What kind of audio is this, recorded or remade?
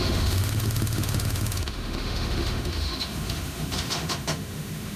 remade